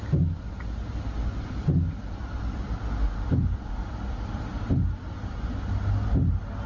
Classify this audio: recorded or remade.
recorded